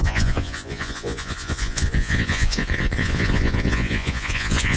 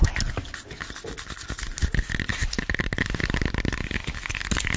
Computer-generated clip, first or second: first